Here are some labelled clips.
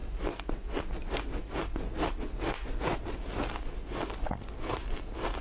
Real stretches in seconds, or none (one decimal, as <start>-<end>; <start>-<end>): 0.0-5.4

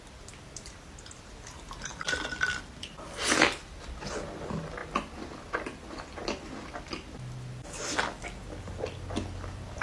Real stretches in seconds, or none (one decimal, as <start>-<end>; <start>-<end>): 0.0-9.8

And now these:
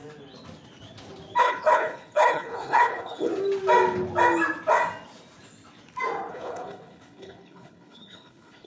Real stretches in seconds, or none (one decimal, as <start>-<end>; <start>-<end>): 0.0-1.4; 3.3-6.3

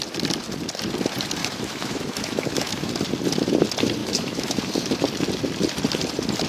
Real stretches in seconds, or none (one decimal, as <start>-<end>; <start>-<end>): 0.0-1.4; 2.9-4.0; 4.6-6.5

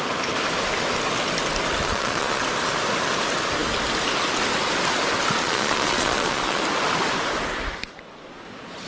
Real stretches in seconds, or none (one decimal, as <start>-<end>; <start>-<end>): 0.0-1.8; 2.4-5.4; 6.6-8.9

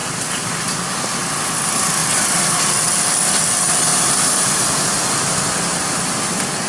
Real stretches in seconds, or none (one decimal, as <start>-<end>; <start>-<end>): 0.6-2.0; 2.6-3.9; 4.9-6.7

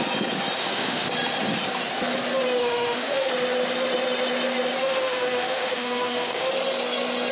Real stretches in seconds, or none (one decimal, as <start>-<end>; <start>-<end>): 0.0-0.6; 1.1-2.6; 3.3-4.8; 6.5-7.3

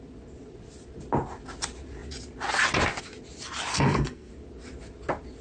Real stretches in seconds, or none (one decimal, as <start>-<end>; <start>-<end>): 0.0-3.7; 4.3-5.4